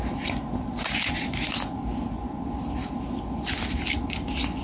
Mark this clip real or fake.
real